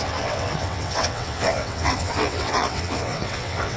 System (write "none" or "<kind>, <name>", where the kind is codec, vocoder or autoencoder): vocoder, WaveNeXt